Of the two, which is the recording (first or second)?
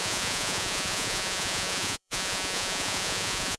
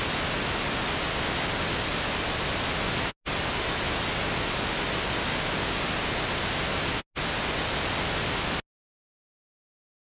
second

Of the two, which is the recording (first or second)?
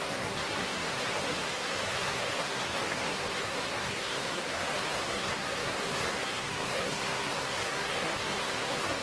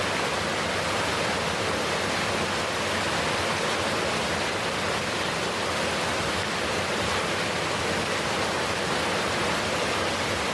second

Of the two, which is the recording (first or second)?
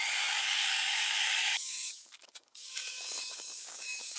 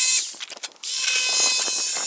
second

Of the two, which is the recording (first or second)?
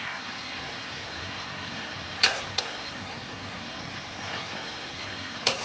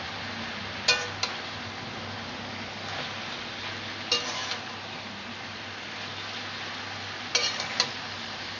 second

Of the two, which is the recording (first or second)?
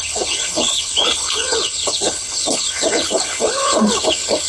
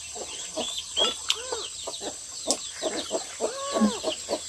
second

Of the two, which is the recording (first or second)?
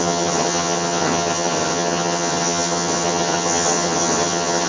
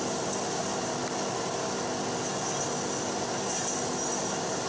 second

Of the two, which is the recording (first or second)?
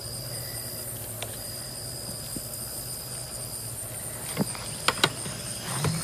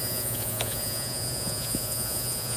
first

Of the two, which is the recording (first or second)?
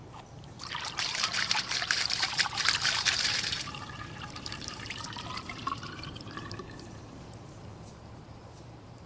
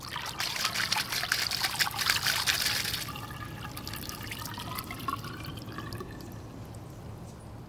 second